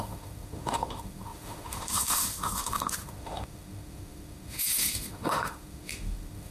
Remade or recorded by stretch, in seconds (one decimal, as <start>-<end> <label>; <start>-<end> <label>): 0.0-6.5 remade